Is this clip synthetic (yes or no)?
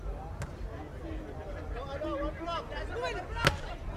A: no